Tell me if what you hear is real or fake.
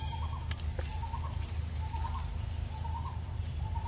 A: real